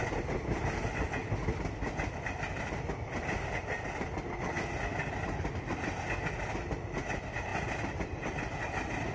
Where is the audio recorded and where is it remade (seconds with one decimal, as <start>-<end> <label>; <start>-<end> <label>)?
0.0-9.1 recorded